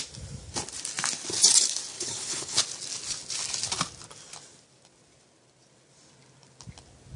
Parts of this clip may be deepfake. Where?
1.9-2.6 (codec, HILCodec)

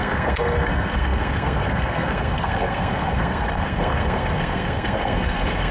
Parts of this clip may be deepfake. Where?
0.0-5.7 (codec, SNAC)

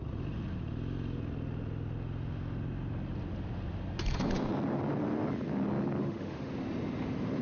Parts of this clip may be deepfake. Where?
6.0-6.5 (autoencoder, DAC-VAE)

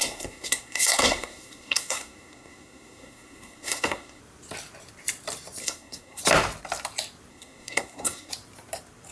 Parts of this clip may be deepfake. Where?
0.0-4.2 (codec, SNAC); 5.6-6.2; 7.3-8.3